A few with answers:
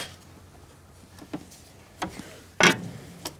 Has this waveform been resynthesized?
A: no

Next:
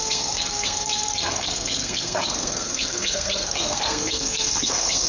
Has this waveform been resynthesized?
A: yes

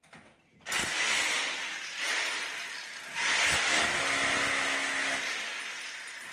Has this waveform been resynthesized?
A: no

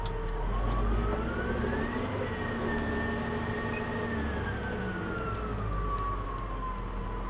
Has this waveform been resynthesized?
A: no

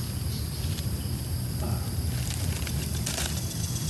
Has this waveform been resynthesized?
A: no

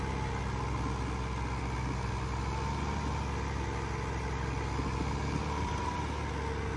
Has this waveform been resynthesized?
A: no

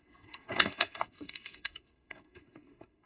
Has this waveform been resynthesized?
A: yes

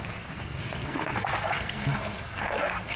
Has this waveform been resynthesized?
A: yes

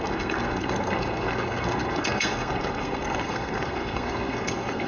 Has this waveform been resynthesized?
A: yes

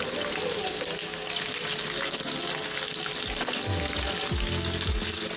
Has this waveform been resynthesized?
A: no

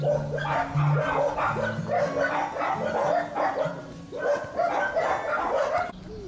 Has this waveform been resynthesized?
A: no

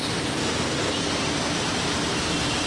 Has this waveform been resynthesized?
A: no